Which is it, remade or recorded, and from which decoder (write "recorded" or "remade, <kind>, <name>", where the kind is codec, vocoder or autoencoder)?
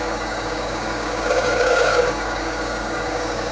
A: remade, codec, DAC